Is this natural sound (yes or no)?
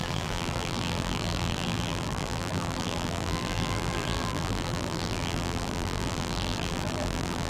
no